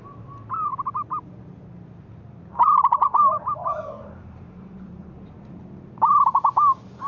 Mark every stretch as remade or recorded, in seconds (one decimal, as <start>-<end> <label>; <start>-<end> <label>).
0.0-3.4 recorded; 3.4-5.1 remade; 5.1-7.1 recorded